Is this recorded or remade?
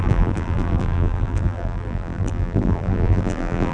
remade